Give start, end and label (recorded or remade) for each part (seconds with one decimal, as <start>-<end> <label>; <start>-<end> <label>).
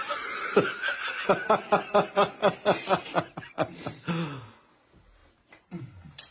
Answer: 0.0-2.4 recorded; 2.4-4.1 remade; 4.1-5.2 recorded; 5.2-5.8 remade; 5.8-6.3 recorded